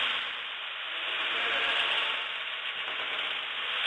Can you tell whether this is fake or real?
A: real